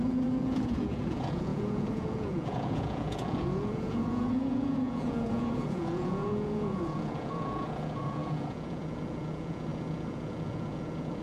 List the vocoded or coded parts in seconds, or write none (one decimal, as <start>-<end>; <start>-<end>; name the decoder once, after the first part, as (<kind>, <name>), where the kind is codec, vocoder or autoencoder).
0.0-11.2 (vocoder, Vocos)